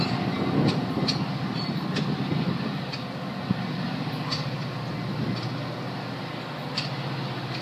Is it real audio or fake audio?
real